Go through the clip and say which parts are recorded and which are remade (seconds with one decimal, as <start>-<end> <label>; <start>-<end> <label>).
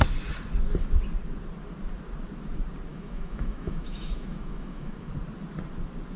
0.0-2.9 recorded; 2.9-5.1 remade; 5.1-6.2 recorded